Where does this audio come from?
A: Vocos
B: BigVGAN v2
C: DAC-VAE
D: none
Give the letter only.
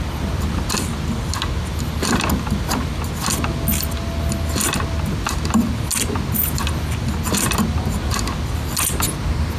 D